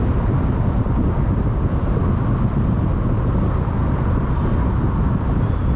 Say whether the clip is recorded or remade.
recorded